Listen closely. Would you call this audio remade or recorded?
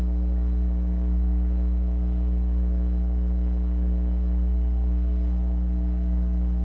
remade